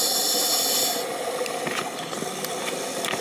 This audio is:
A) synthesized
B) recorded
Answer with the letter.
B